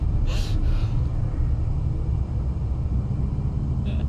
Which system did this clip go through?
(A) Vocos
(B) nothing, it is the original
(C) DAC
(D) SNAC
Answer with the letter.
B